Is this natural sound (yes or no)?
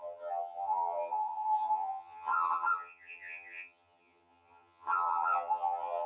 no